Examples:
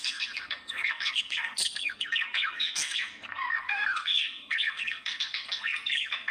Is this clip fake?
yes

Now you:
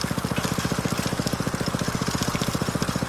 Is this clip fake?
no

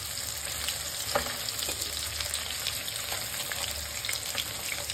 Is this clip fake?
no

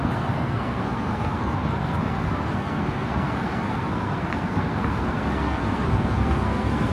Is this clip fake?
yes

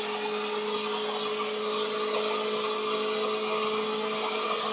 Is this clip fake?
no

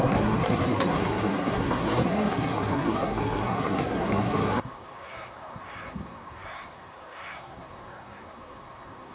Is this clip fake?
yes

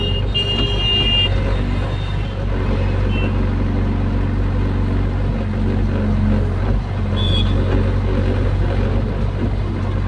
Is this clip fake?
no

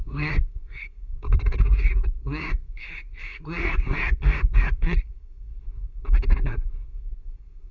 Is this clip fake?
yes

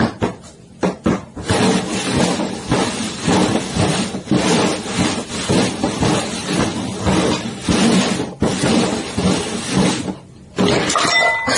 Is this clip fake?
no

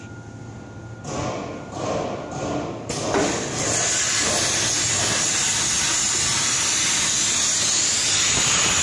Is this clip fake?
no